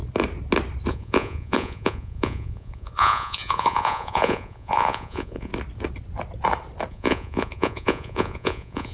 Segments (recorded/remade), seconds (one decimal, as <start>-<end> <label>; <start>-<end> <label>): 0.0-0.9 recorded; 0.9-5.5 remade; 5.5-6.9 recorded; 6.9-8.9 remade